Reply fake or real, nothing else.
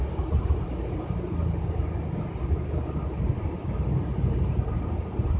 real